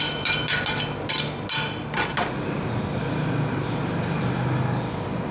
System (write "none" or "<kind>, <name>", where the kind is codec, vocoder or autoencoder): none